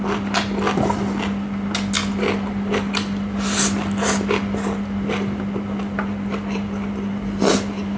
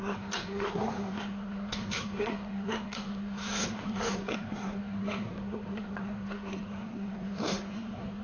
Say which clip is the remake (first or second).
second